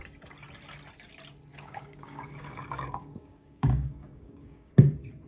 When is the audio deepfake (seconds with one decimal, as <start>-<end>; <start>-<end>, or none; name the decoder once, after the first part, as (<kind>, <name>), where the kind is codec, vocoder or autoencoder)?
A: 1.5-4.7 (codec, DAC)